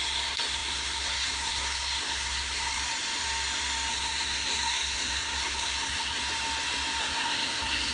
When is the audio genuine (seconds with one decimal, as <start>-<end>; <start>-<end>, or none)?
2.8-3.9; 6.2-7.0